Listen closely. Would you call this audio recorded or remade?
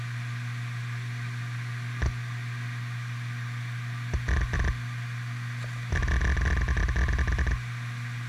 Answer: recorded